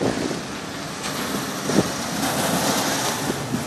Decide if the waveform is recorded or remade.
recorded